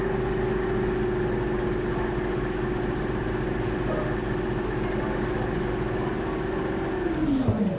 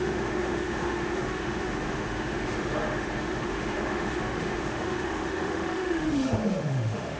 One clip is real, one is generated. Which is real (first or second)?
first